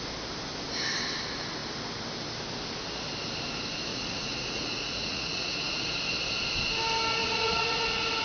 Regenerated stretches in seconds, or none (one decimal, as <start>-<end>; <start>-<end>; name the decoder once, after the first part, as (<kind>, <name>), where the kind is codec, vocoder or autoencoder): 3.9-5.8 (vocoder, Vocos); 7.2-8.2